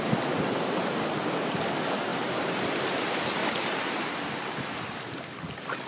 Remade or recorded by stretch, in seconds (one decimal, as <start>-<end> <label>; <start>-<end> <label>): 0.0-2.1 recorded; 2.1-2.8 remade; 2.8-3.4 recorded; 3.4-4.1 remade; 4.1-5.9 recorded